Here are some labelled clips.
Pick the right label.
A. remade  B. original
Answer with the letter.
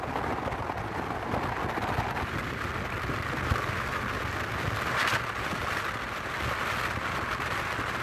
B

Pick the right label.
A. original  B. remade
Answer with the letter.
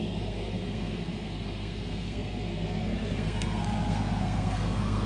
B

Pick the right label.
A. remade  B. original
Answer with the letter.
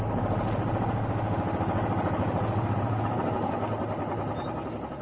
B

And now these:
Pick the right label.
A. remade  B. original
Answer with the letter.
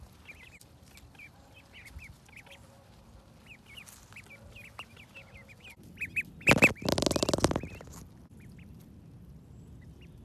B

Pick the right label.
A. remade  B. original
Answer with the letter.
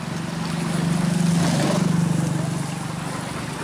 B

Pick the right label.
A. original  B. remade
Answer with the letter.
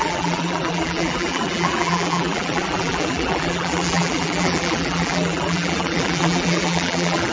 B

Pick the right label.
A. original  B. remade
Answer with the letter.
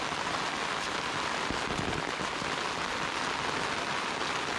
A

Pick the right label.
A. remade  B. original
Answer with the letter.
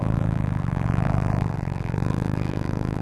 A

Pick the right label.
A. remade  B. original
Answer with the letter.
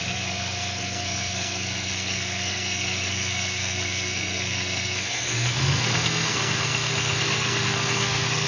A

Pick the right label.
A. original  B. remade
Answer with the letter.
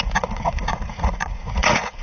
B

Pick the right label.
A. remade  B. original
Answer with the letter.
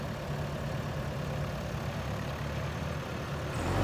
B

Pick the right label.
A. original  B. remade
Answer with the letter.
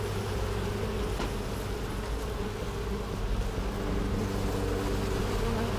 A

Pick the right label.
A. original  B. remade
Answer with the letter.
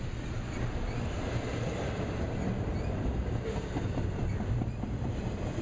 A